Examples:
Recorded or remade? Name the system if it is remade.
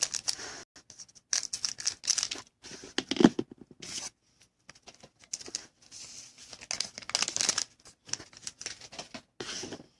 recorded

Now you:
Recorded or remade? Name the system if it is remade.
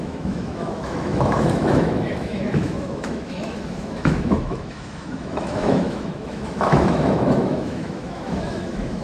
remade, autoencoder, DAC-VAE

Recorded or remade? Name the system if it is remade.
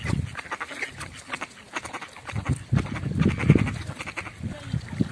recorded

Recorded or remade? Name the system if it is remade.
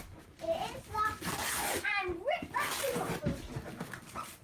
recorded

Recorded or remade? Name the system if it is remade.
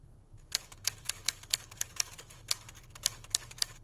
remade, codec, DAC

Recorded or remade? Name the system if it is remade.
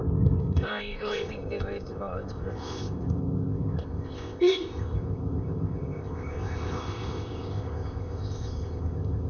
remade, codec, ZipCodec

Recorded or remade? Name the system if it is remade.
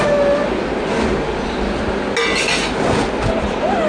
recorded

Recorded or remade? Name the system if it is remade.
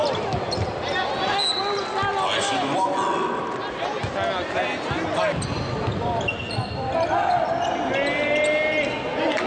recorded